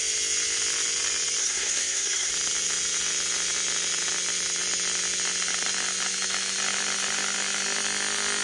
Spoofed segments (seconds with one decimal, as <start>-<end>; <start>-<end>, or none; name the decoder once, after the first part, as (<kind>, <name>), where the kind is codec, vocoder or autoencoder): 1.4-2.3 (codec, SNAC)